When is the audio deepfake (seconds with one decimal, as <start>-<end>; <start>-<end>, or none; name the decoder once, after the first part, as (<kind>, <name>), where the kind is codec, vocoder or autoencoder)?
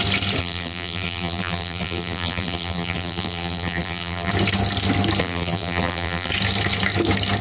0.4-4.3 (vocoder, BigVGAN v2); 5.2-6.3